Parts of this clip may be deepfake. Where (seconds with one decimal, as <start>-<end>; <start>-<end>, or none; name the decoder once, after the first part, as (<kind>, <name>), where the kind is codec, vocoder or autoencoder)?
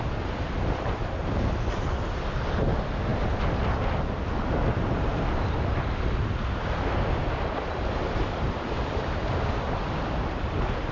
0.0-3.1 (vocoder, BigVGAN v2); 7.1-10.9